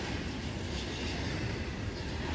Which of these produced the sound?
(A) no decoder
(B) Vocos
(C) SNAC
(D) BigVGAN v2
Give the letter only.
A